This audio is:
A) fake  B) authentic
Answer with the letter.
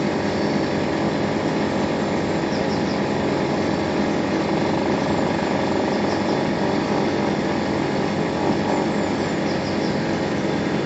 B